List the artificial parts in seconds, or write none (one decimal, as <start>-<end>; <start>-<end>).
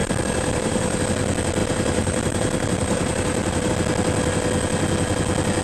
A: 0.0-1.0; 1.6-3.7